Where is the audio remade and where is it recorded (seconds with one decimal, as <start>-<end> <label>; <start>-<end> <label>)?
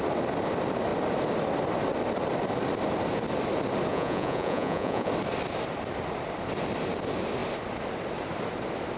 0.0-3.9 recorded; 3.9-5.1 remade; 5.1-9.0 recorded